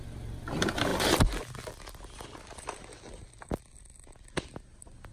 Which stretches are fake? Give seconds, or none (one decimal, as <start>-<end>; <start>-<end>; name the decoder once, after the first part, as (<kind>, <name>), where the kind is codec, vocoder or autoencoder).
none